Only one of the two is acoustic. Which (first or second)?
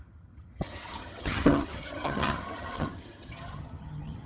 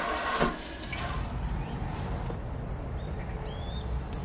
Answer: second